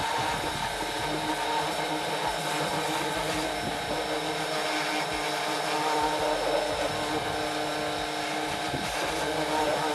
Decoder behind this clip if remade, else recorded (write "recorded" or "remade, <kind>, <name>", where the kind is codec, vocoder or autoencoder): recorded